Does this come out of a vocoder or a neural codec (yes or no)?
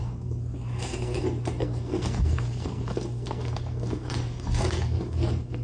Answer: yes